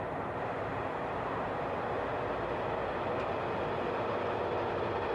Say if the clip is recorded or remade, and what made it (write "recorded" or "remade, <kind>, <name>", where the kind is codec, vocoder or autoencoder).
recorded